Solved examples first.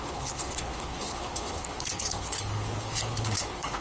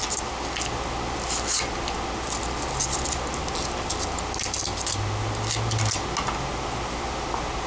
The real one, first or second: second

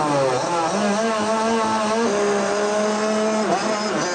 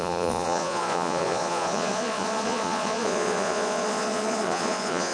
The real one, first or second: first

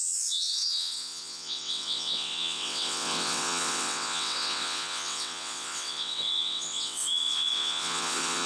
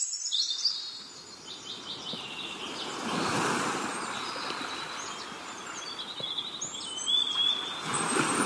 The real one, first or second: second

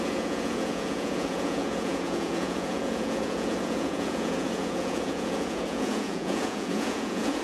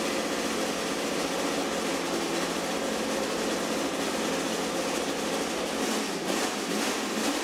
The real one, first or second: second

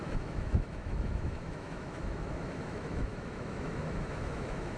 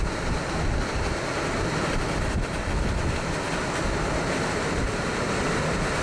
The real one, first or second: second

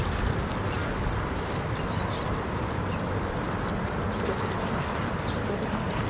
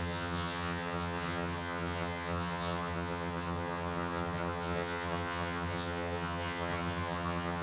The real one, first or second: first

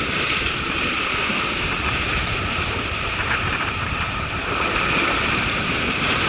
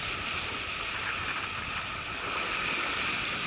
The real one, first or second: second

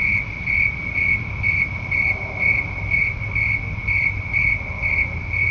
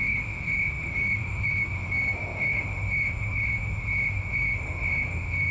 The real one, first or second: first